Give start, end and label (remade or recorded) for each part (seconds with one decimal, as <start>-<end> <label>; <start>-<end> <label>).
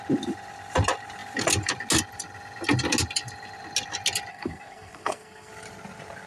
0.0-4.3 recorded; 4.3-5.5 remade; 5.5-6.3 recorded